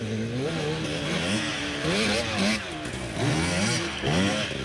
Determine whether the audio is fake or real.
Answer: real